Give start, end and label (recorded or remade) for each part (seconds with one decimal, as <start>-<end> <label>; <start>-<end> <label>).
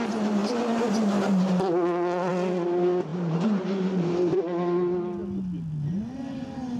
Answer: 0.0-3.1 recorded; 3.1-4.4 remade; 4.4-6.8 recorded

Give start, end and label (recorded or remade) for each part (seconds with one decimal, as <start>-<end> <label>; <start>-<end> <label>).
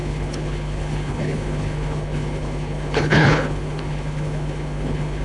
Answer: 0.0-5.2 remade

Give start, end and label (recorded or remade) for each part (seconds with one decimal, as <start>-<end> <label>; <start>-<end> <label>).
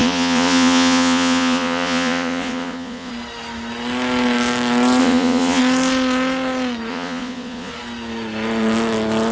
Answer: 0.0-3.1 remade; 3.1-5.0 recorded; 5.0-5.6 remade; 5.6-6.9 recorded; 6.9-7.7 remade; 7.7-9.3 recorded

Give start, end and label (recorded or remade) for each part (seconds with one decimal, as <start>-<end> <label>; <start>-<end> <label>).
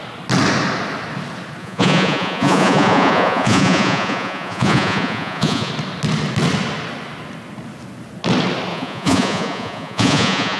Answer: 0.0-1.6 recorded; 1.6-5.7 remade; 5.7-8.7 recorded; 8.7-10.6 remade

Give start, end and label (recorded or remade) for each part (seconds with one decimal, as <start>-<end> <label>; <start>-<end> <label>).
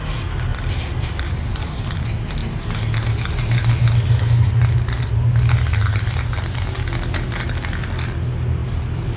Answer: 0.0-0.5 recorded; 0.5-2.0 remade; 2.0-8.6 recorded; 8.6-9.2 remade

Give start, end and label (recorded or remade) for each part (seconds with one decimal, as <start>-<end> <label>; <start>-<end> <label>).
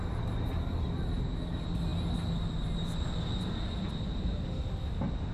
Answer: 0.0-5.3 recorded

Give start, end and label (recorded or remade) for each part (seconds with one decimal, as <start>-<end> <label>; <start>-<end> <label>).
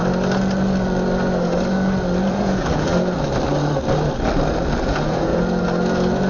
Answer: 0.0-2.3 recorded; 2.3-2.9 remade; 2.9-4.8 recorded; 4.8-5.3 remade; 5.3-6.3 recorded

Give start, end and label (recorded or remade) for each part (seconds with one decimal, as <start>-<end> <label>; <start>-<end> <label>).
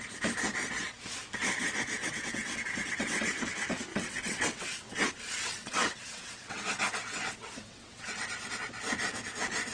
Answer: 0.0-2.0 recorded; 2.0-3.4 remade; 3.4-3.9 recorded; 3.9-6.6 remade; 6.6-7.1 recorded; 7.1-8.1 remade; 8.1-9.7 recorded